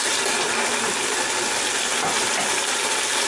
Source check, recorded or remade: remade